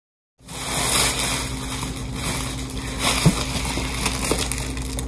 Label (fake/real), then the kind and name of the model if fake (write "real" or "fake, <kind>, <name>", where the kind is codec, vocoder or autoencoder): real